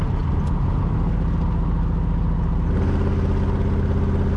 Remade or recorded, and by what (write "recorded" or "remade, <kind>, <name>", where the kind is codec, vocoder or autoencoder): recorded